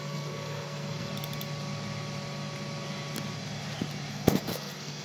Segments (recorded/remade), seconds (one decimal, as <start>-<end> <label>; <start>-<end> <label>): 0.0-1.1 remade; 1.1-4.1 recorded; 4.1-5.0 remade